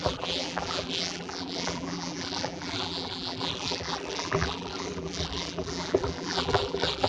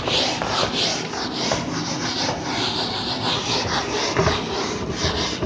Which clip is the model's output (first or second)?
first